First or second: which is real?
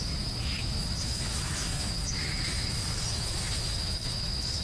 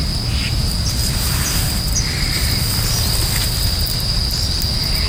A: second